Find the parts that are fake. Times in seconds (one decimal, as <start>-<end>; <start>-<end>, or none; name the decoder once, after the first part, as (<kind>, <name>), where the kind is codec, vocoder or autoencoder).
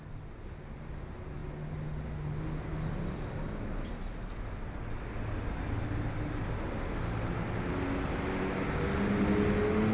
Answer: none